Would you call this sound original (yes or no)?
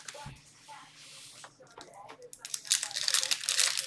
yes